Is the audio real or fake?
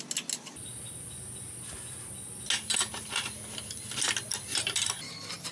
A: real